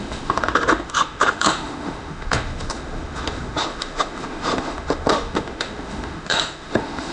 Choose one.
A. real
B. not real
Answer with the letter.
B